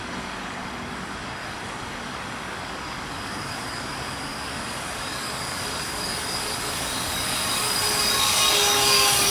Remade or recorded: remade